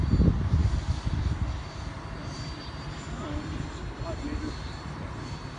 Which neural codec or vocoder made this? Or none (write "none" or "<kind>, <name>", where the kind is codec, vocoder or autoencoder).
none